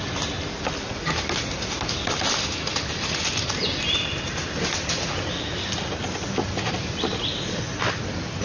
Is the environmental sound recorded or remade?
recorded